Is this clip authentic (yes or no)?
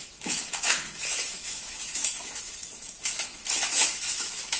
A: no